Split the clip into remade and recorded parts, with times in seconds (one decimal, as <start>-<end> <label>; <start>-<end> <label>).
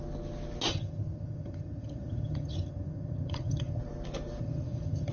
0.0-0.7 recorded; 0.7-3.8 remade; 3.8-4.4 recorded; 4.4-5.1 remade